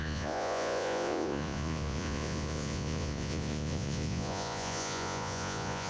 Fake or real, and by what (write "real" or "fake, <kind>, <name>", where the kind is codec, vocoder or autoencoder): fake, vocoder, Vocos